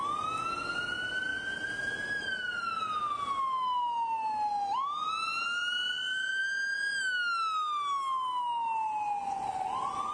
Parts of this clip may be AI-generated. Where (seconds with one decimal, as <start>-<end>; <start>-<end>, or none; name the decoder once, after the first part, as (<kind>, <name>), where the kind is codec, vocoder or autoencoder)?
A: none